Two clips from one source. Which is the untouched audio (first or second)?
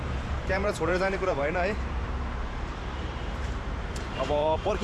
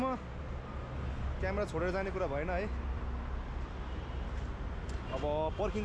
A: second